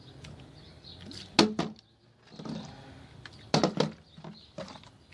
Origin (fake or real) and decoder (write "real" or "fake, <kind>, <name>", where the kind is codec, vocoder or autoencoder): real